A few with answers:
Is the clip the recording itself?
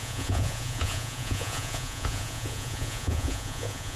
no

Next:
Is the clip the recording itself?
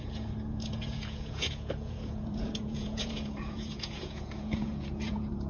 no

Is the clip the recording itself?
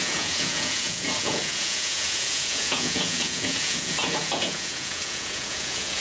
no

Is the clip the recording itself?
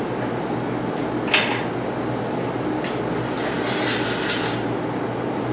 yes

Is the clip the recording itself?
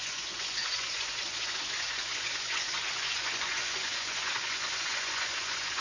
no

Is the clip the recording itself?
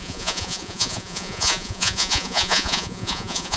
no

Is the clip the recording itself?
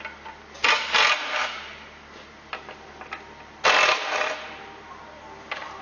yes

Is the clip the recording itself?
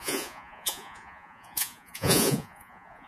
no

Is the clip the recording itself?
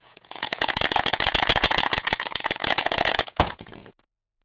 no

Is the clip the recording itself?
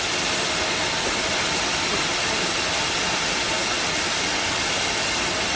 yes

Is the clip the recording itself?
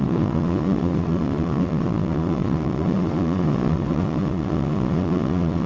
no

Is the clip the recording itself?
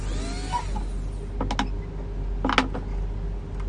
yes